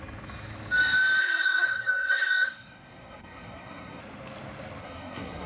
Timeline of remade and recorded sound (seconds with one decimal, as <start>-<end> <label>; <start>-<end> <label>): 0.0-1.2 recorded; 1.2-4.0 remade; 4.0-4.8 recorded; 4.8-5.5 remade